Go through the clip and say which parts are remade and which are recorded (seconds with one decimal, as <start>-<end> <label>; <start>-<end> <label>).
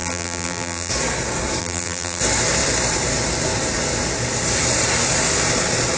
0.0-0.9 remade; 0.9-1.6 recorded; 1.6-2.2 remade; 2.2-6.0 recorded